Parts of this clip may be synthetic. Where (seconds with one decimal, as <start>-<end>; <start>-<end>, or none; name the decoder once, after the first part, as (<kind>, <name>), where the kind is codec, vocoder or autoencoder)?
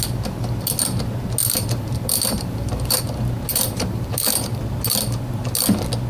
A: 1.4-3.0 (vocoder, BigVGAN v2); 3.5-4.6